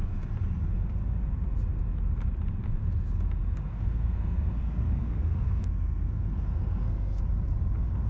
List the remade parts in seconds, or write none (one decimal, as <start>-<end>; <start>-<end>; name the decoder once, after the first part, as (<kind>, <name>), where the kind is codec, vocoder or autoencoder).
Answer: 3.7-7.2 (codec, SNAC)